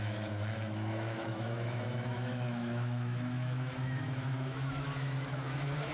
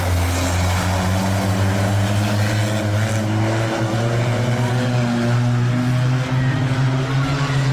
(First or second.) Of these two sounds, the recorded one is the second